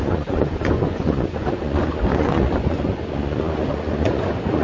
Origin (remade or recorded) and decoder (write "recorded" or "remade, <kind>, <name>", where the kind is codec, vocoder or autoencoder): remade, vocoder, Vocos